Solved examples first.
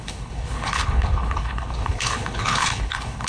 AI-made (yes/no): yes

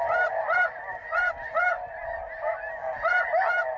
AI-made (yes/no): no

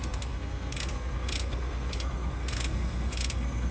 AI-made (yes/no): yes